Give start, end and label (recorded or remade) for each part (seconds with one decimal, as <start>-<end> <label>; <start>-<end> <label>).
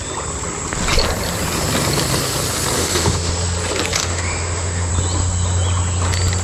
0.0-2.8 recorded; 2.8-3.3 remade; 3.3-4.0 recorded; 4.0-4.9 remade; 4.9-6.4 recorded